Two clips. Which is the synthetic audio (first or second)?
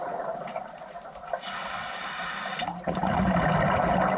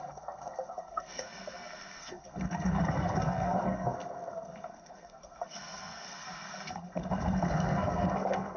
second